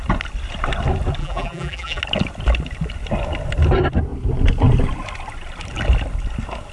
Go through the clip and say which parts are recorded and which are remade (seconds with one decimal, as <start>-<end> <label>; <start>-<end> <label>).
0.0-1.2 recorded; 1.2-2.0 remade; 2.0-6.7 recorded